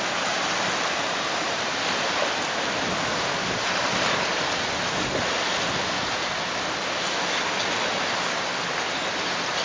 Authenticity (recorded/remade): recorded